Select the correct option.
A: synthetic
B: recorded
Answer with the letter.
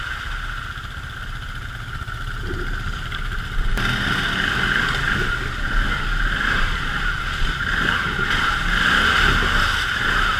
B